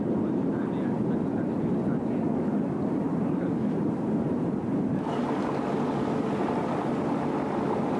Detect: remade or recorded recorded